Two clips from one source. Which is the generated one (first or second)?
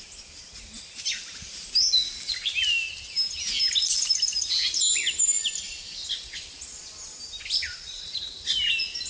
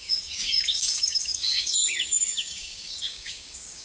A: second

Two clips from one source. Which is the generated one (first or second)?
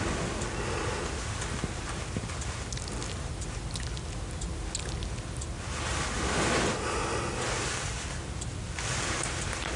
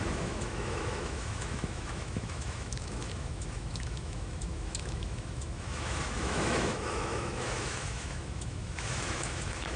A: second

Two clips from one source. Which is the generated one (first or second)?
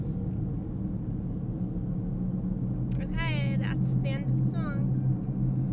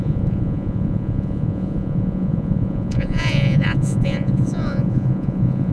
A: second